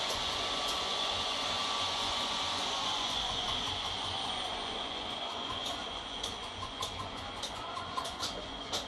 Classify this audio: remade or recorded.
remade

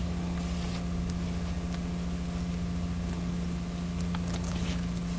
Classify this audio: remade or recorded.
recorded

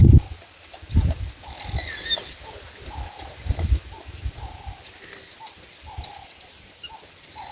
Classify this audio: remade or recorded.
recorded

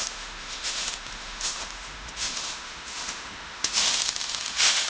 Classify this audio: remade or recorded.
remade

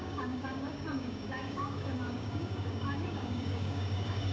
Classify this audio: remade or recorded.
remade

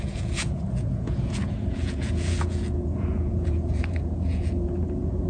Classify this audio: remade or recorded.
remade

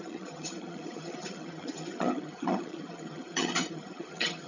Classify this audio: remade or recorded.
remade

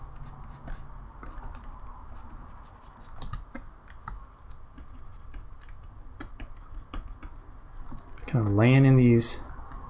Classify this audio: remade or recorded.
recorded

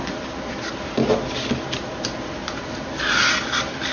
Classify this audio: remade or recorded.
recorded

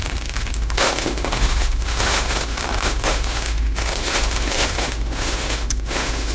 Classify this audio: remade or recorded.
remade